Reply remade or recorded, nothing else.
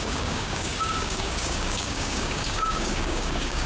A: remade